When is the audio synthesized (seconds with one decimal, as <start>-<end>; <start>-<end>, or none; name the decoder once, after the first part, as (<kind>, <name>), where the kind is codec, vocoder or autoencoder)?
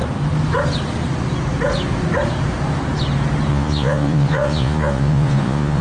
3.5-5.8 (vocoder, Vocos)